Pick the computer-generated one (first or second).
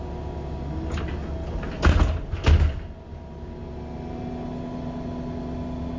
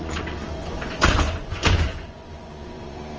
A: second